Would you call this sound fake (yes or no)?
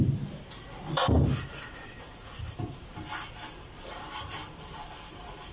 yes